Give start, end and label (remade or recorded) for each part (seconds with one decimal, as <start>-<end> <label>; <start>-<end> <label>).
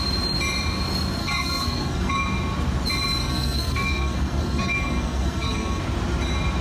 0.0-1.2 recorded; 1.2-2.1 remade; 2.1-3.2 recorded; 3.2-5.8 remade; 5.8-6.6 recorded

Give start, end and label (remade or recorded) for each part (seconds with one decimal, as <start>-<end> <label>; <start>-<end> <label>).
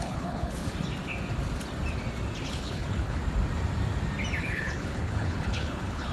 0.0-0.6 remade; 0.6-2.5 recorded; 2.5-3.2 remade; 3.2-4.4 recorded; 4.4-6.1 remade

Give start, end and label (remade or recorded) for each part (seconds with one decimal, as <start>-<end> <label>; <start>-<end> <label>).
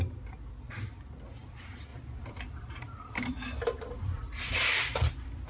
0.0-1.9 recorded; 1.9-5.5 remade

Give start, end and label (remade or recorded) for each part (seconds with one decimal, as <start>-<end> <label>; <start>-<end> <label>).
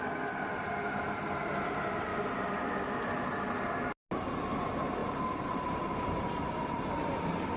0.0-7.6 recorded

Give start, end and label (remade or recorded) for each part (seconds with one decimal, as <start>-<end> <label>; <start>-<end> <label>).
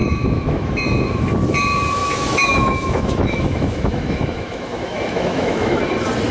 0.0-1.2 remade; 1.2-2.0 recorded; 2.0-5.8 remade; 5.8-6.3 recorded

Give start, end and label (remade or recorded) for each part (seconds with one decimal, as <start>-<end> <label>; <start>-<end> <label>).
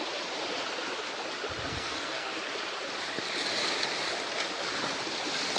0.0-1.7 recorded; 1.7-2.4 remade; 2.4-5.6 recorded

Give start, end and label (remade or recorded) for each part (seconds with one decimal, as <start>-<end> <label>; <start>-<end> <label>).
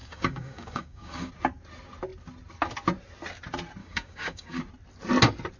0.0-1.3 remade; 1.3-3.8 recorded; 3.8-4.6 remade; 4.6-5.6 recorded